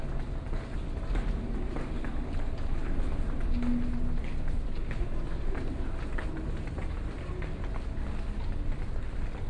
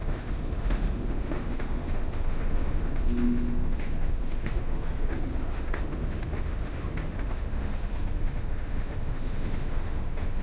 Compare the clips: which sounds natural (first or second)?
first